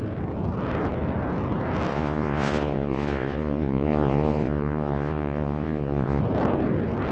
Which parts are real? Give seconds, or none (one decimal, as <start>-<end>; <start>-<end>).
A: 0.0-1.9; 6.2-7.1